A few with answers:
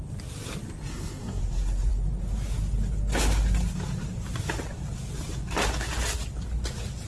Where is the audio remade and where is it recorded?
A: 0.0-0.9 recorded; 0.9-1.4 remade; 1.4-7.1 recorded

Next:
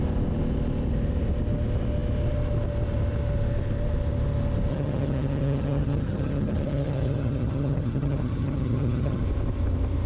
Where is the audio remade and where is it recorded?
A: 0.0-4.7 recorded; 4.7-9.2 remade; 9.2-10.1 recorded

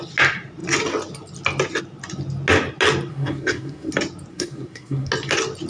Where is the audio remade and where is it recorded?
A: 0.0-3.1 recorded; 3.1-3.9 remade; 3.9-4.3 recorded; 4.3-5.1 remade; 5.1-5.7 recorded